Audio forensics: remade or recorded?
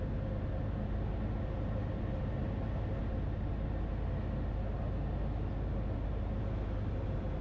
recorded